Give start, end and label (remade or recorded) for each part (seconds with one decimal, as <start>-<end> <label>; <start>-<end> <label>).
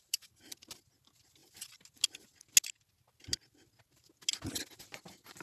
0.0-5.4 recorded